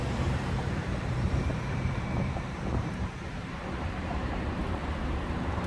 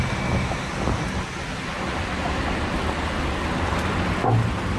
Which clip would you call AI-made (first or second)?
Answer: first